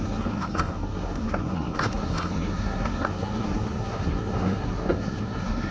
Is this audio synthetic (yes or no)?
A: yes